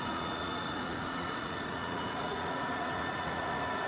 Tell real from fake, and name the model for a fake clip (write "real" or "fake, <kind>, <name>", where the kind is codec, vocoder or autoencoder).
fake, vocoder, Vocos